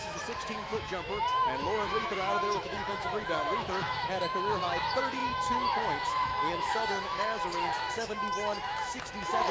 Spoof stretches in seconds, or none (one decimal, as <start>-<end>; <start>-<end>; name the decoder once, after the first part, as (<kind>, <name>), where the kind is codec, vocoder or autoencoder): 0.0-9.5 (autoencoder, DAC-VAE)